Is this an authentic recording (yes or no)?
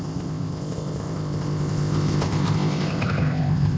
no